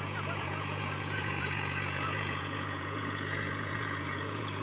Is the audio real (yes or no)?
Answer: no